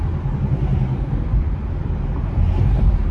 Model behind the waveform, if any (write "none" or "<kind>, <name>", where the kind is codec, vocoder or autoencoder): none